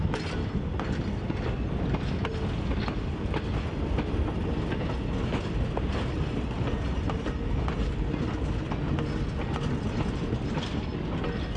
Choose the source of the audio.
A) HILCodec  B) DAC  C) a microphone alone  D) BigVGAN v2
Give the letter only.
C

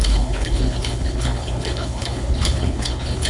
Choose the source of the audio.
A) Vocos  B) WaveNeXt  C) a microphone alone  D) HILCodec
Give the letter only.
D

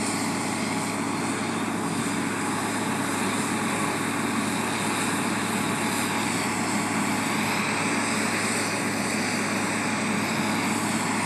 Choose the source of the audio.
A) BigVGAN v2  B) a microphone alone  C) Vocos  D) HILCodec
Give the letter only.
B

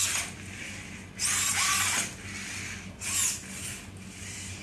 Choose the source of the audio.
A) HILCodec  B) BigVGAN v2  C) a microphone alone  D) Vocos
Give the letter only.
C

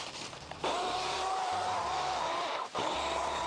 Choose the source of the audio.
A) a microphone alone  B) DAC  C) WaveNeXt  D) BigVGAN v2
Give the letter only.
D